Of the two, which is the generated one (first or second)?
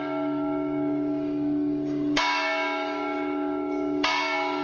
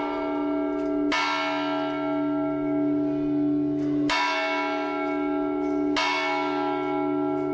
first